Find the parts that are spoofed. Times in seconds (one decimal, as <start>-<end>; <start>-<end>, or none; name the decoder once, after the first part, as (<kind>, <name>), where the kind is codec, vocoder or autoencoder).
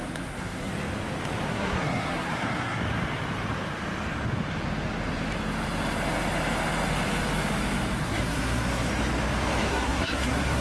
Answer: 0.0-0.7 (codec, SNAC); 1.5-2.8; 8.0-8.9; 9.6-10.6